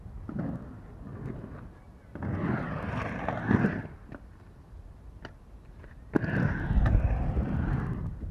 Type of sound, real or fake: real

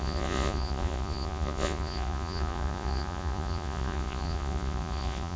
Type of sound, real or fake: fake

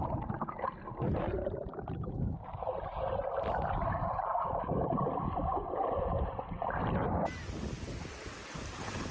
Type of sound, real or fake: real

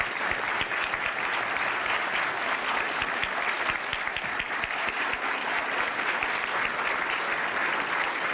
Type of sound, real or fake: real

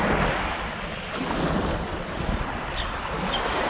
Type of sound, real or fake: real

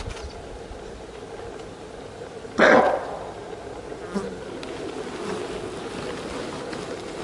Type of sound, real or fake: real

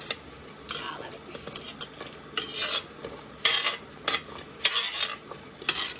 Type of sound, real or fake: real